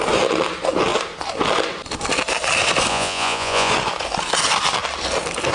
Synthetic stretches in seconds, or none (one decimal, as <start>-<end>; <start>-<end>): 2.9-3.7